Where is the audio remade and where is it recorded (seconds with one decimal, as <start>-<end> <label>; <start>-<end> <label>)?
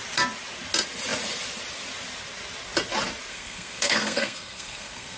0.0-3.3 recorded; 3.3-5.2 remade